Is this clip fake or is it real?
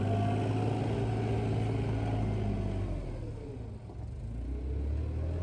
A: real